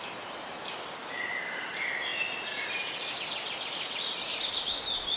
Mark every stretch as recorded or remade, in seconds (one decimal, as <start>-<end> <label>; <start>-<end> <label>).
0.0-5.2 recorded